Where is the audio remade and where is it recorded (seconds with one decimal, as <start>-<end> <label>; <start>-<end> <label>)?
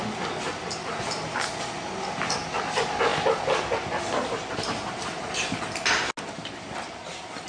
0.0-7.5 recorded